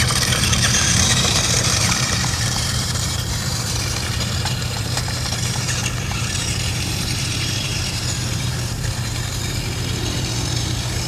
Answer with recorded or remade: remade